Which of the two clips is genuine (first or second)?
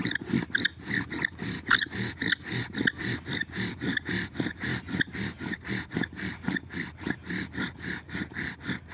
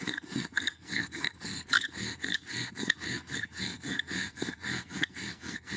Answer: first